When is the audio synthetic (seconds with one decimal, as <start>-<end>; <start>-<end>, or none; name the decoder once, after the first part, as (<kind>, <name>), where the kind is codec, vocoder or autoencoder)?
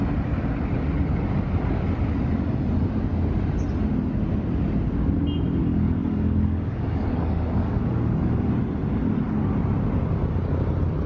5.6-8.5 (codec, DAC)